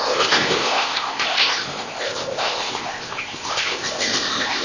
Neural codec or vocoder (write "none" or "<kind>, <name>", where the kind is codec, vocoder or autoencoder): codec, ZipCodec